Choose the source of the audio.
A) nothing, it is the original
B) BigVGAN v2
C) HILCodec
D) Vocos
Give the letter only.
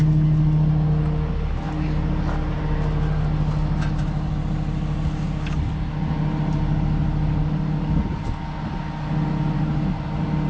A